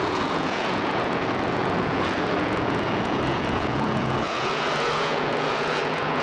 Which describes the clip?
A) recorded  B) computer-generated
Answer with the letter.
B